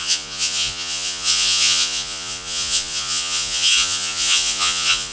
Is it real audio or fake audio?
fake